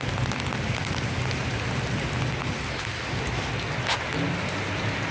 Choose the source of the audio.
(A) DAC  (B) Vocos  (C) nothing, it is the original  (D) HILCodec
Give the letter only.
C